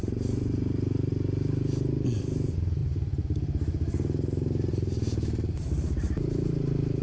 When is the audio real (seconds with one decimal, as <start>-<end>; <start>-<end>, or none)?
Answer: 1.1-2.2; 2.8-4.7